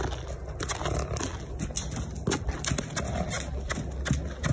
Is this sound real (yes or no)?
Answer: yes